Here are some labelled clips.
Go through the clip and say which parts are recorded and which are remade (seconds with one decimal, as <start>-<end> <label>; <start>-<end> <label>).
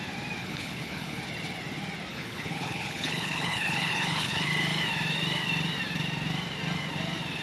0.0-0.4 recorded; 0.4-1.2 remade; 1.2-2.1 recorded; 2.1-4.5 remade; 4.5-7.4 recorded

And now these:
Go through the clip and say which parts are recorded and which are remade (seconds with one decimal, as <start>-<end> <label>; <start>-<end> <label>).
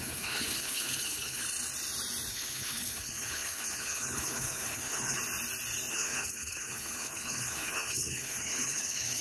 0.0-1.4 remade; 1.4-2.3 recorded; 2.3-5.2 remade; 5.2-5.9 recorded; 5.9-9.2 remade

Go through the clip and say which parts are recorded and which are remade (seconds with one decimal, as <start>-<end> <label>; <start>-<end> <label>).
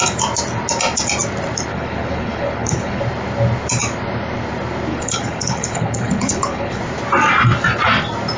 0.0-1.7 recorded; 1.7-3.0 remade; 3.0-4.9 recorded; 4.9-6.8 remade; 6.8-8.4 recorded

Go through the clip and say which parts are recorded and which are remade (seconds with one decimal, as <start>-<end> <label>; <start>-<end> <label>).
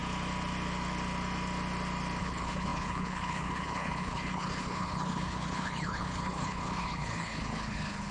0.0-2.2 recorded; 2.2-8.1 remade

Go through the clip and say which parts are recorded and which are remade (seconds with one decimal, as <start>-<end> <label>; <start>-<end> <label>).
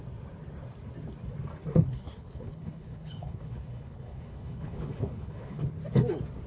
0.0-1.7 recorded; 1.7-5.6 remade; 5.6-6.5 recorded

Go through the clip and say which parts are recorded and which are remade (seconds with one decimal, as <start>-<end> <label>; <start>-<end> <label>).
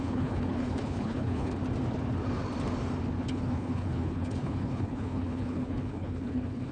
0.0-1.6 remade; 1.6-3.3 recorded; 3.3-6.7 remade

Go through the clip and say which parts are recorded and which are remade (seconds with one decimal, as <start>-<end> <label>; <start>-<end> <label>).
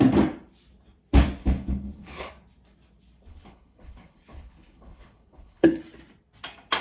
0.0-1.4 recorded; 1.4-2.3 remade; 2.3-3.3 recorded; 3.3-5.8 remade; 5.8-6.8 recorded